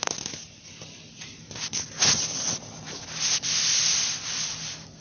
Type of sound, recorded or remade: recorded